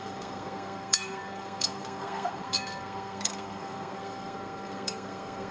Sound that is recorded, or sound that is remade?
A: remade